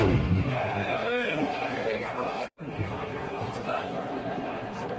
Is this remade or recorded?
remade